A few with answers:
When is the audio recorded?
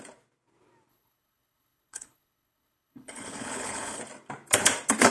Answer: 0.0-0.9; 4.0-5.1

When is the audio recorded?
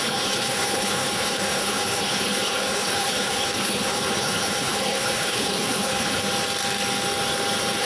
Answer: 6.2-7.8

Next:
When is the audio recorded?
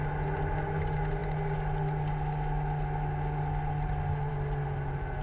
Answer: 0.0-5.2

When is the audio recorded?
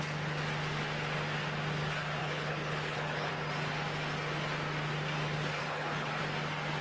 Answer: 0.0-2.2; 3.3-5.6; 6.2-6.8